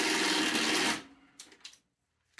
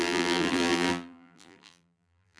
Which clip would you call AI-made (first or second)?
second